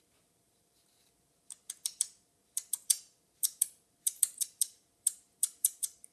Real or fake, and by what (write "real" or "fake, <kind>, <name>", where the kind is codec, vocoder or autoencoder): fake, vocoder, BigVGAN v2